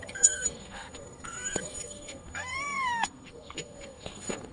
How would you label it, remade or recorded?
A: remade